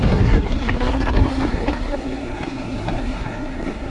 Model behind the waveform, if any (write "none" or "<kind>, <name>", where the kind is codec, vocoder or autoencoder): codec, SNAC